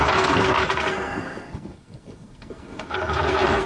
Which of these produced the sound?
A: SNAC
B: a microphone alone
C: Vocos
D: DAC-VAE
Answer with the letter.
A